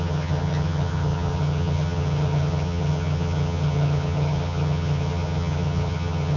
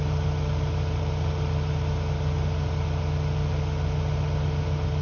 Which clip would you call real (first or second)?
second